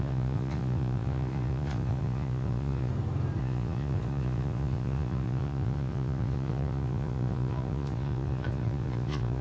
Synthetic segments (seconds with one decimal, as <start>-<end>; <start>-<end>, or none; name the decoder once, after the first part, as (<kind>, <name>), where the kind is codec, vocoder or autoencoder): 0.0-2.9 (vocoder, Vocos); 3.4-9.4